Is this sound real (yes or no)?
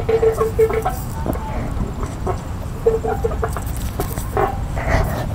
yes